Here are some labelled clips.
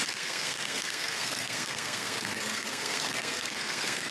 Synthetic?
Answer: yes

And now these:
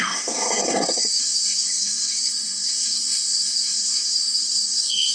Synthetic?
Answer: yes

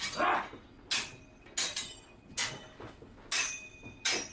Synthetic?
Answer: no